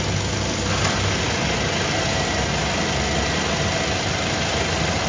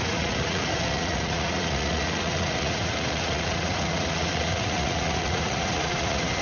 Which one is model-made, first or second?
second